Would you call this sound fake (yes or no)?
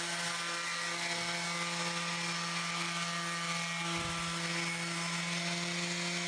no